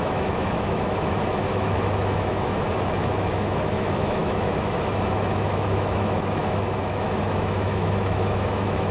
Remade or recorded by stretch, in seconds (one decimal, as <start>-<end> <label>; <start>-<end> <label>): 0.0-8.9 remade